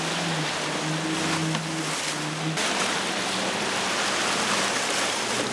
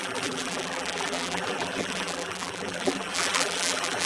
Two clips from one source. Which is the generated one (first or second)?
second